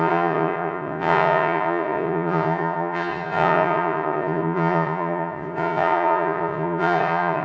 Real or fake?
fake